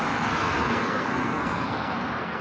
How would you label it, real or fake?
fake